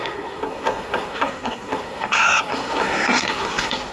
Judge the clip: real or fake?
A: fake